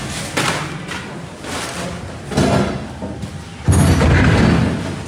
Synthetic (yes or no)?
no